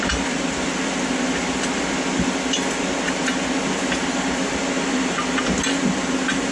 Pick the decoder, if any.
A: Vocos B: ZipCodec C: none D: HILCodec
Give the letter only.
C